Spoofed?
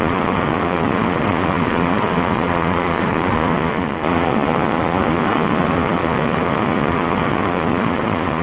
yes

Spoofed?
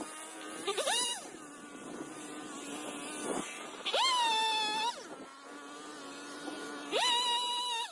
no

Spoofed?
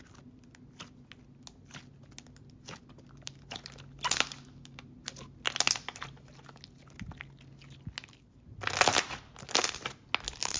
no